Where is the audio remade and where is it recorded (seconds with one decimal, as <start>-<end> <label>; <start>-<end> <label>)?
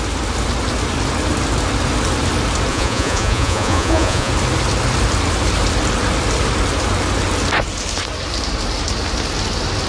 0.0-2.7 recorded; 2.7-4.3 remade; 4.3-9.9 recorded